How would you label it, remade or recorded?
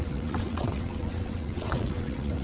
remade